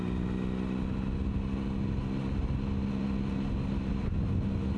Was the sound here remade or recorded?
recorded